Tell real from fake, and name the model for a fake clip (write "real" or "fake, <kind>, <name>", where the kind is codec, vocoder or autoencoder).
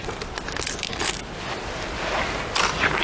real